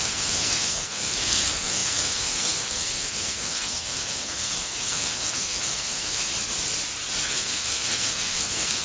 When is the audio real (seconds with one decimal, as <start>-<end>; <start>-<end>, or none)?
6.3-7.2